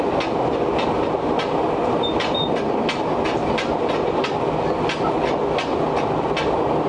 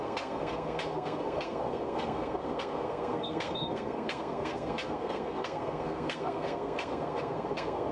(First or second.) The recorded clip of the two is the first